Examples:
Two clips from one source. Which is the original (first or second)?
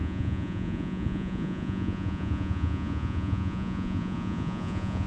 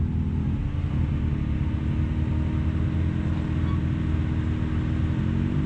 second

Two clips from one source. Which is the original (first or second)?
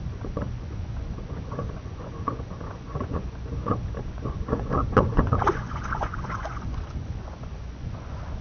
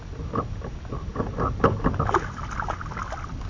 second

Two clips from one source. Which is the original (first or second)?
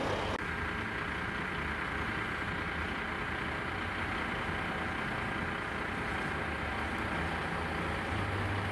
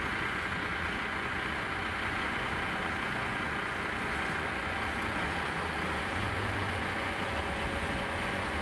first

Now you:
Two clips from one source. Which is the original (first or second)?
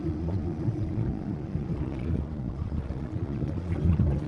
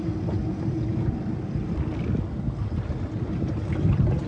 second